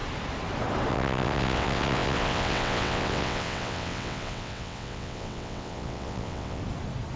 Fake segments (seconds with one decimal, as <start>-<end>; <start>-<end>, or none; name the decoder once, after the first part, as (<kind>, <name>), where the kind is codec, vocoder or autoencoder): 0.9-6.6 (vocoder, WaveNeXt)